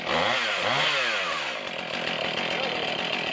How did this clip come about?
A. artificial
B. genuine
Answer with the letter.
B